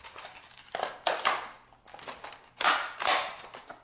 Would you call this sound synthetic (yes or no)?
no